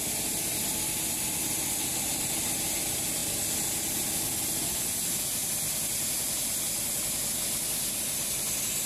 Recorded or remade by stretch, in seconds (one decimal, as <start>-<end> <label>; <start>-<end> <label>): 0.0-8.9 recorded

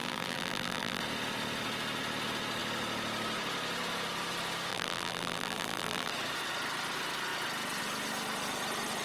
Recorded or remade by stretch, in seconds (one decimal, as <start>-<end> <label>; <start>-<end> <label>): 0.0-1.0 remade; 1.0-4.7 recorded; 4.7-6.1 remade; 6.1-9.0 recorded

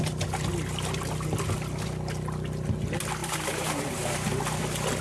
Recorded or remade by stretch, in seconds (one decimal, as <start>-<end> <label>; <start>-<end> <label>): 0.0-3.2 recorded; 3.2-4.4 remade; 4.4-5.0 recorded